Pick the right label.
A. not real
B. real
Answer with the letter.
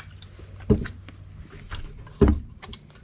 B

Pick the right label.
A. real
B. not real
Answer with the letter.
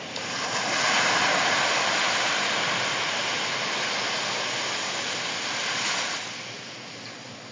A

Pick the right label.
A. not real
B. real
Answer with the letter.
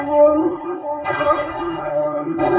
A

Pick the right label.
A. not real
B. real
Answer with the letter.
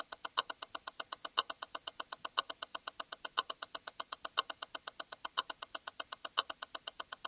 B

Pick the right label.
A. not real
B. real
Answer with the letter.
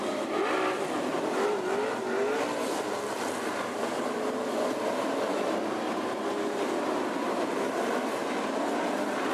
B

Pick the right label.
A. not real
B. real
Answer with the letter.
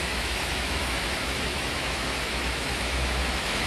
A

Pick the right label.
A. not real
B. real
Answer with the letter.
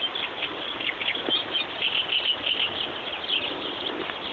B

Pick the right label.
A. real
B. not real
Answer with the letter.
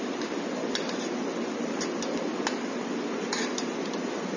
A